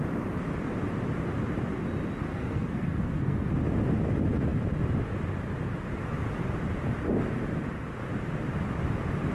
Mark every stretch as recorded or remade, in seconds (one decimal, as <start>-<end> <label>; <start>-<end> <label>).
0.0-2.3 recorded; 2.3-3.5 remade; 3.5-9.3 recorded